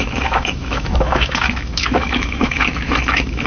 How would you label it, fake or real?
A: fake